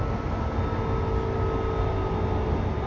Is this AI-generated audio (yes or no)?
no